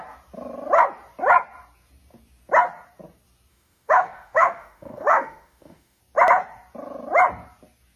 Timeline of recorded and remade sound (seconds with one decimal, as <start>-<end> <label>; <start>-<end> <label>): 0.0-3.5 recorded; 3.5-6.0 remade; 6.0-8.0 recorded